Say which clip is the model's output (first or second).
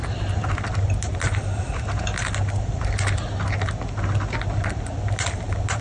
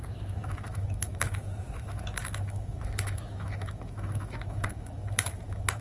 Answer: second